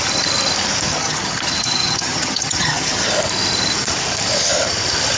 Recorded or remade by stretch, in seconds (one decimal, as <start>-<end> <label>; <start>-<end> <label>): 0.0-0.9 recorded; 0.9-3.1 remade; 3.1-5.2 recorded